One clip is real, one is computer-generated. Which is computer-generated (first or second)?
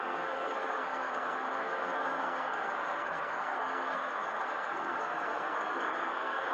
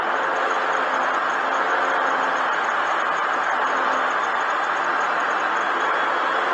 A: first